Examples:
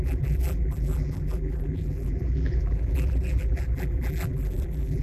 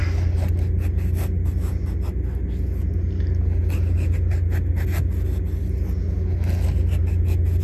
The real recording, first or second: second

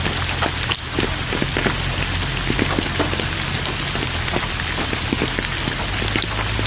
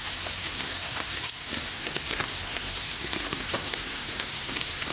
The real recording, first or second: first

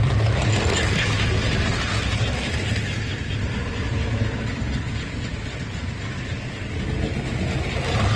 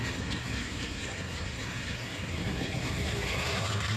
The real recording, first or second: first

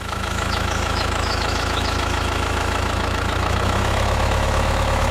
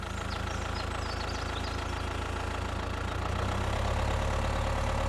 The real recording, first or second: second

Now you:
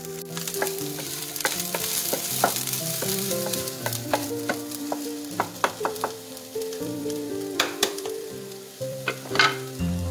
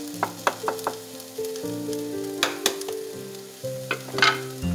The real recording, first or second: second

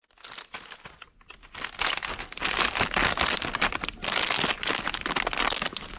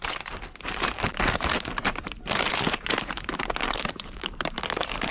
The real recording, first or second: first